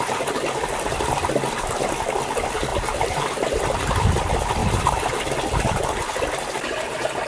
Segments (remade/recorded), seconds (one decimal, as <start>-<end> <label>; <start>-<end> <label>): 0.0-2.7 recorded; 2.7-3.5 remade; 3.5-4.6 recorded; 4.6-5.8 remade; 5.8-7.3 recorded